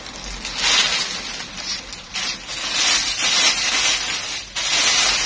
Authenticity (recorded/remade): recorded